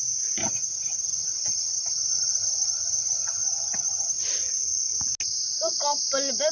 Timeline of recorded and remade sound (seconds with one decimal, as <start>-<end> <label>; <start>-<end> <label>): 0.0-0.4 recorded; 0.4-4.2 remade; 4.2-6.5 recorded